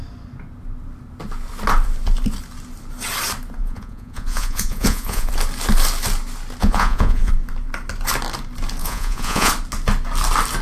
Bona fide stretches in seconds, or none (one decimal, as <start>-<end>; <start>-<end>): 0.0-3.6; 5.3-6.6; 7.3-8.8; 9.5-10.6